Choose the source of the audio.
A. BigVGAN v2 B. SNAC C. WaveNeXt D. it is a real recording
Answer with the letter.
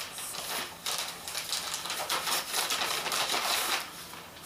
D